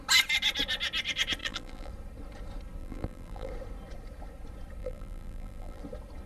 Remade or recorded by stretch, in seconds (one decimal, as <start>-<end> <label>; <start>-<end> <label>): 0.0-1.4 recorded; 1.4-1.9 remade; 1.9-2.8 recorded; 2.8-3.5 remade; 3.5-4.8 recorded; 4.8-5.8 remade; 5.8-6.3 recorded